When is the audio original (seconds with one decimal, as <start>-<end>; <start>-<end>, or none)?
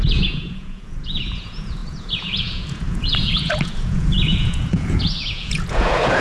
none